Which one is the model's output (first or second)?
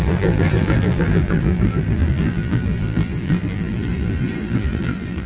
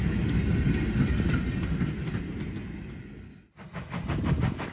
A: first